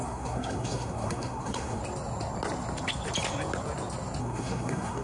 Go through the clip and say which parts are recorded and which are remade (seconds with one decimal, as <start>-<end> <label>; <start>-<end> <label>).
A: 0.0-1.8 remade; 1.8-4.2 recorded; 4.2-5.0 remade